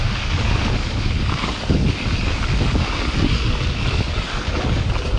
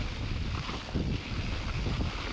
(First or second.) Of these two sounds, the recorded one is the second